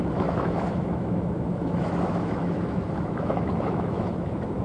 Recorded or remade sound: remade